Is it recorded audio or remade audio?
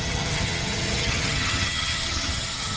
remade